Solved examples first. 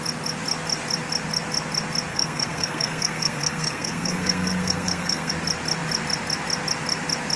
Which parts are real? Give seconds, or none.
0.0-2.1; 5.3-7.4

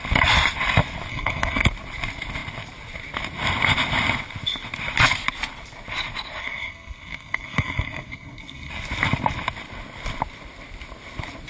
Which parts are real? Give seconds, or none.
0.0-1.1; 1.7-6.4; 8.7-11.5